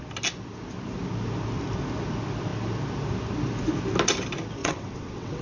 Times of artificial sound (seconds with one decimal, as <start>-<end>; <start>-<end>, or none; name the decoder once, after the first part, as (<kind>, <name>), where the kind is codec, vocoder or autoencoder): 4.6-5.4 (vocoder, WaveNeXt)